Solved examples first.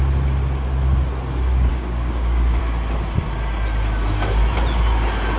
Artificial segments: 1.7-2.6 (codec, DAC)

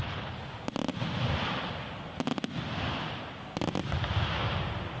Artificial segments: none

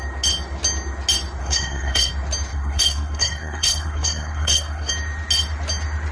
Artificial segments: 1.4-2.1 (codec, SNAC); 2.5-4.9

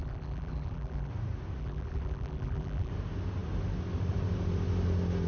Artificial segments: 0.0-1.1 (vocoder, BigVGAN v2); 1.6-2.9

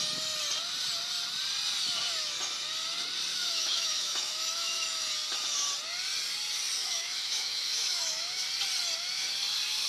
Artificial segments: 3.3-5.1 (autoencoder, DAC-VAE); 6.8-8.4

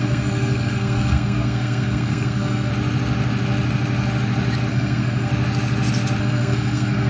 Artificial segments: 0.0-2.7 (codec, SNAC); 4.7-5.3; 6.2-7.1